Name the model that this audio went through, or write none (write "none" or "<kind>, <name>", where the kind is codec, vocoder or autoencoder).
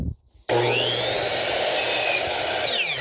none